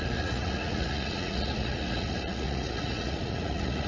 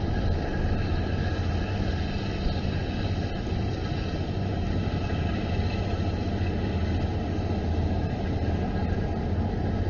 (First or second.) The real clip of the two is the second